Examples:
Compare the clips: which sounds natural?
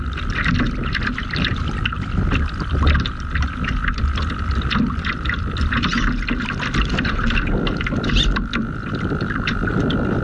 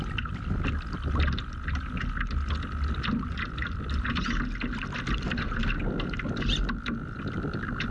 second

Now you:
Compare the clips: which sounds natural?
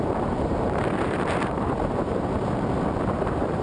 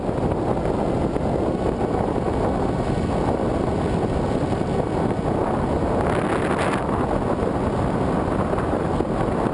second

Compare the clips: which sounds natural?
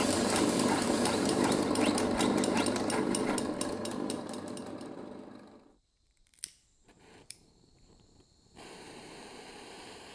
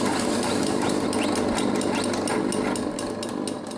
second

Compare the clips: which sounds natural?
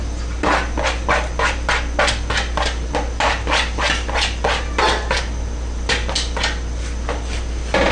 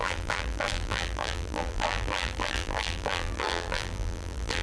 first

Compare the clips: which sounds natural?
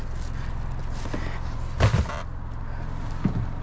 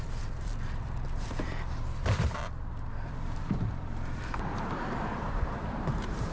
first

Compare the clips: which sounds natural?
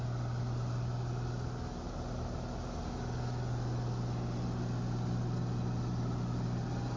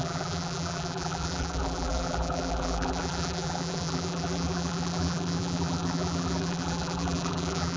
first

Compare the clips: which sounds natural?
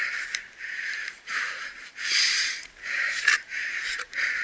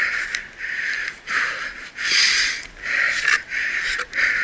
second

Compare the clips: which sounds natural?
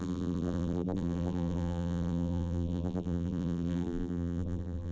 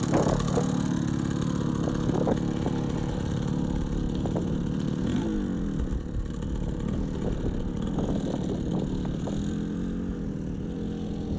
second